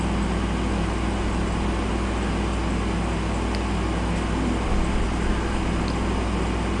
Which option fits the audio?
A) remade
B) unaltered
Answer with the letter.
B